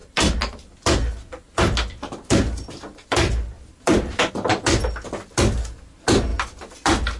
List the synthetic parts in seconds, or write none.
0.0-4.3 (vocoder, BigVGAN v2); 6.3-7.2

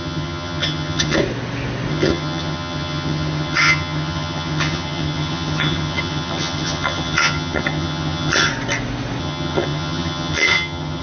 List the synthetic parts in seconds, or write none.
0.0-1.2 (vocoder, HiFi-GAN); 1.9-8.5; 9.2-11.0

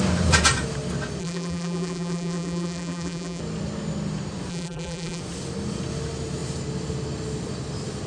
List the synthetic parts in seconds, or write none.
1.2-3.4 (vocoder, BigVGAN v2); 4.5-5.2

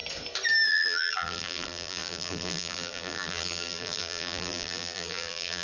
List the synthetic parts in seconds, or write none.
0.7-5.6 (vocoder, BigVGAN v2)

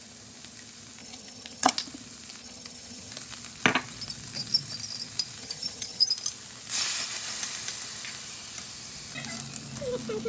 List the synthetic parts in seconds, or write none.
1.0-1.7 (vocoder, HiFi-GAN); 2.4-3.1; 5.4-6.1

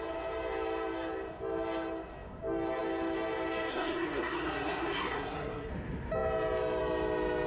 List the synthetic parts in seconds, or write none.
3.7-5.7 (codec, SNAC)

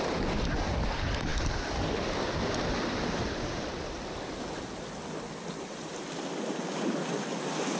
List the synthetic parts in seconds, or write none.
none